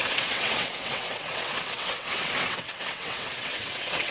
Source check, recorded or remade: remade